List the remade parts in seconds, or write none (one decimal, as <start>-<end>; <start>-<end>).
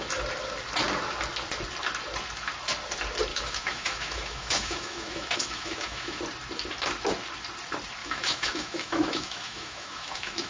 3.3-6.2; 8.0-10.5